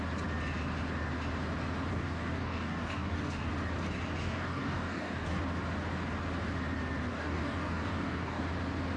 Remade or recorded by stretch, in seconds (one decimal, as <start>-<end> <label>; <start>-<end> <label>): 0.0-1.9 recorded; 1.9-3.5 remade; 3.5-4.2 recorded; 4.2-5.4 remade; 5.4-7.1 recorded; 7.1-8.4 remade; 8.4-9.0 recorded